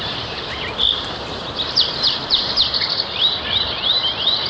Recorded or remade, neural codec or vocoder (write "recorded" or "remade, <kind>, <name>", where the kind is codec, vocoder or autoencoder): remade, vocoder, BigVGAN v2